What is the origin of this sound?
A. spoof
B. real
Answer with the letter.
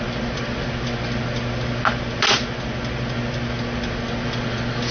B